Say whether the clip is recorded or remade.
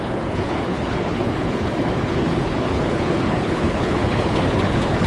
remade